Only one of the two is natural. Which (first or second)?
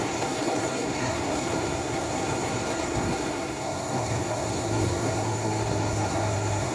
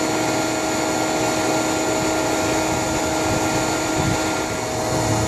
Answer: second